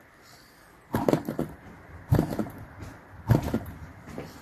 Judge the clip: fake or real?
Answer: fake